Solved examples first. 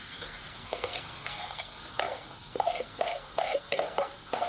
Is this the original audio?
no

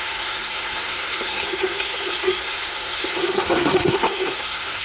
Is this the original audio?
no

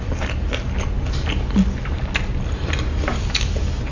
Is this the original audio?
yes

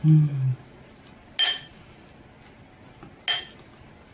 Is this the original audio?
yes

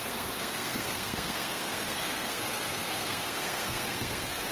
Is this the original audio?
no